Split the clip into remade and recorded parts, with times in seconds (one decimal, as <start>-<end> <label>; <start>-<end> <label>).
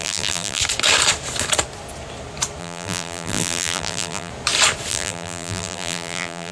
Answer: 0.0-0.6 remade; 0.6-2.6 recorded; 2.6-4.3 remade; 4.3-4.9 recorded; 4.9-6.5 remade